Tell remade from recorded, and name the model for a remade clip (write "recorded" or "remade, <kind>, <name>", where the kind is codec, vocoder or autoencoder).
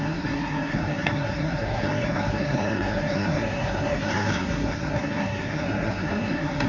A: remade, codec, SNAC